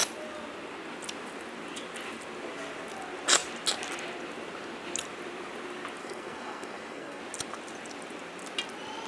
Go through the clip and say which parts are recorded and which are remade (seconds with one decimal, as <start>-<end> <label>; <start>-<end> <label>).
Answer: 0.0-6.0 recorded; 6.0-7.2 remade; 7.2-9.1 recorded